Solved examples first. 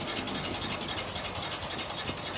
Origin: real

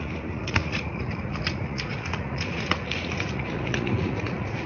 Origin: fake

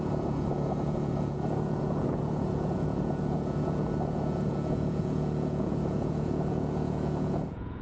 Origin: fake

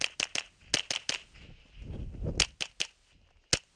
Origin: real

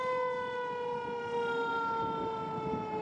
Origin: real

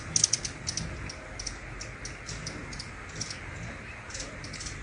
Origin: real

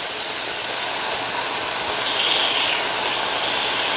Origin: real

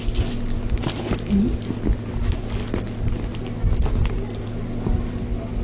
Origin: real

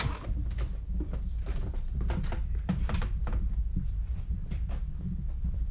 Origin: real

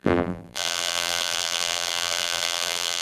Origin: fake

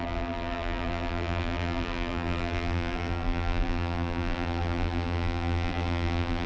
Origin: fake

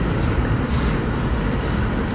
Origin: real